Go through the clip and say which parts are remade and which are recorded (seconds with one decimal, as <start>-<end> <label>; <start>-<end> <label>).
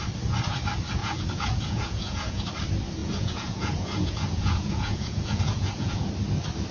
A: 0.0-1.0 recorded; 1.0-2.5 remade; 2.5-3.0 recorded; 3.0-6.1 remade; 6.1-6.7 recorded